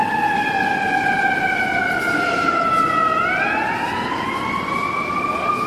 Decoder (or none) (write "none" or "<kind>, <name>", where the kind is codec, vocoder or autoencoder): none